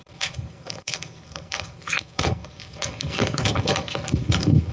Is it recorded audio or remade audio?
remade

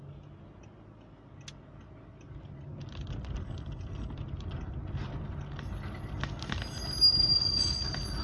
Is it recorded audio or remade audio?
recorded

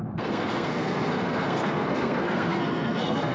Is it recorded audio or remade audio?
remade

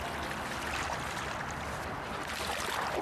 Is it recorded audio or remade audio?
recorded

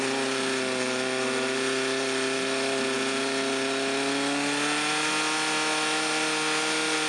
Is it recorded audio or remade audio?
recorded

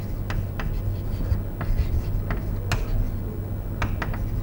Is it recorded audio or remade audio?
recorded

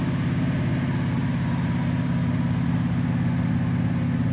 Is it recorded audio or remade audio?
recorded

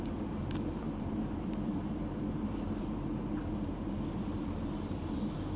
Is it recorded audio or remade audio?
remade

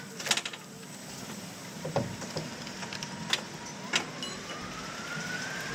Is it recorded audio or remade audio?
recorded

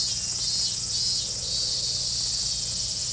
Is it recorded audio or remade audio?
recorded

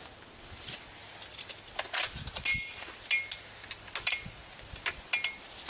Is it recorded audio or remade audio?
recorded